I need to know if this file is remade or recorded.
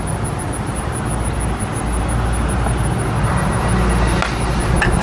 recorded